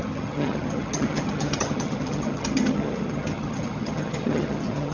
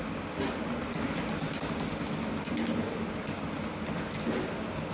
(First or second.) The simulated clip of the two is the first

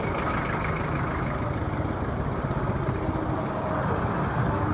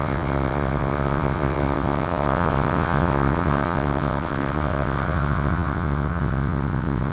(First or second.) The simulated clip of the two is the second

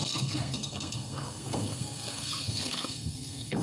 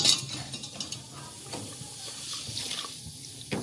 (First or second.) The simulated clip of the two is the first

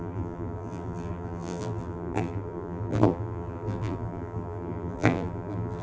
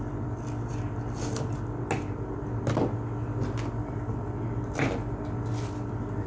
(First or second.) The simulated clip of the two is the first